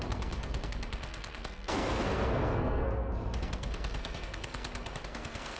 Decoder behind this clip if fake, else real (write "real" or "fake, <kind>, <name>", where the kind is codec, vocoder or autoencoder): fake, codec, SNAC